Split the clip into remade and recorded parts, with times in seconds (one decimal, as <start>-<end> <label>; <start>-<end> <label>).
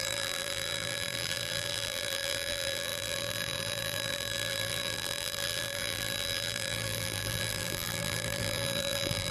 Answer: 0.0-9.3 remade